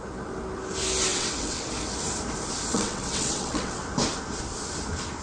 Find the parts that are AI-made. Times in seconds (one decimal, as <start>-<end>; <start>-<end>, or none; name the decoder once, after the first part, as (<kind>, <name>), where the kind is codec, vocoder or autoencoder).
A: 1.1-1.7 (vocoder, WaveNeXt); 2.7-3.8

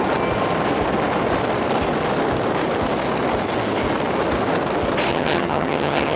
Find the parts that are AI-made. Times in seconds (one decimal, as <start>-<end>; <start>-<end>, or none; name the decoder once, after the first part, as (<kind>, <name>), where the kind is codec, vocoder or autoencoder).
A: 5.1-6.2 (vocoder, HiFi-GAN)

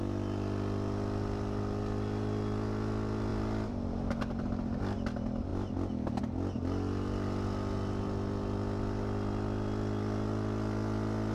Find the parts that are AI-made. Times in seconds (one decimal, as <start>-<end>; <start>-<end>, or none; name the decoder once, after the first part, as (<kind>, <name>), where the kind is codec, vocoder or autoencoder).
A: none

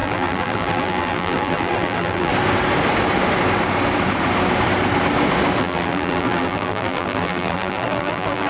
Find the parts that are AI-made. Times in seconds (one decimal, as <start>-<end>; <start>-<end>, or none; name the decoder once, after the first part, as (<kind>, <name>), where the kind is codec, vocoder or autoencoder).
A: 0.0-2.3 (vocoder, BigVGAN v2); 5.6-8.5

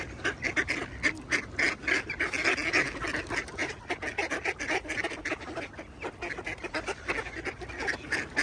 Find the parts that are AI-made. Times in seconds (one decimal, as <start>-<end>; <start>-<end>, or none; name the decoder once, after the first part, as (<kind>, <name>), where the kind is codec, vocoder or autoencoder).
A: none

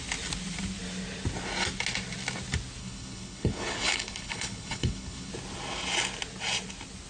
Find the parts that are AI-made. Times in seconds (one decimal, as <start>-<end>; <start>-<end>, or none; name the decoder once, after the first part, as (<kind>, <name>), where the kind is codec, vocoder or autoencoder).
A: 2.8-5.3 (codec, HILCodec)